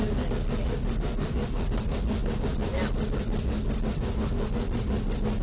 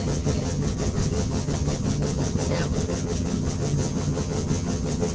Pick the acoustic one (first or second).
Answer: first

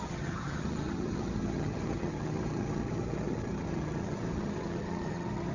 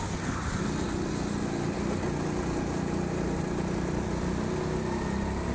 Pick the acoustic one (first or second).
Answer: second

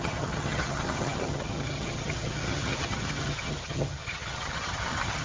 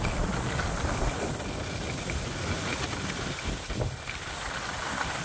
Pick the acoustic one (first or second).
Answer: second